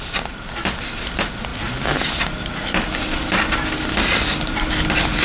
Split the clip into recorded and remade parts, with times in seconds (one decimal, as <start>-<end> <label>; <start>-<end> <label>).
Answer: 0.0-5.2 recorded